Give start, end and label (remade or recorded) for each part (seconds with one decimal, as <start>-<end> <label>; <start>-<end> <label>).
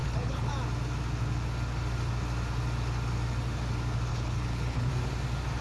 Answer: 0.0-0.5 remade; 0.5-4.1 recorded; 4.1-4.9 remade; 4.9-5.6 recorded